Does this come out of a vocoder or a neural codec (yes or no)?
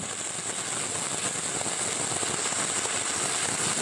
no